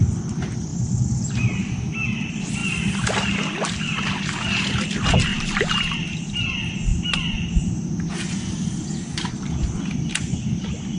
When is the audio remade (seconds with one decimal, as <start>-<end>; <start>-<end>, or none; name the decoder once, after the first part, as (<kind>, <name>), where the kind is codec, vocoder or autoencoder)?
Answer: 0.7-1.6 (vocoder, BigVGAN v2); 5.3-6.4